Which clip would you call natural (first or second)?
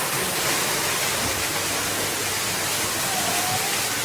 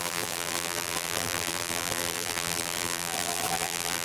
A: first